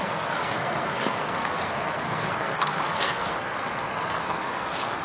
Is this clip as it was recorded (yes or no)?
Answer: no